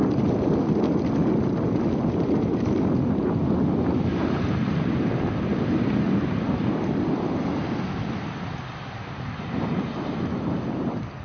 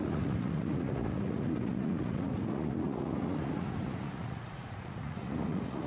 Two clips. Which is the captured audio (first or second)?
first